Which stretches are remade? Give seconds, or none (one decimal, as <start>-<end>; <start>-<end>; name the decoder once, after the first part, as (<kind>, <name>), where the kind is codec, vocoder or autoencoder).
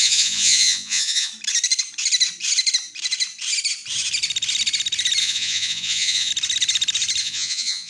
0.0-1.3 (vocoder, Vocos); 5.2-6.3; 7.2-7.9